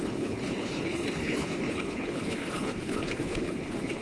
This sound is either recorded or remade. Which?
remade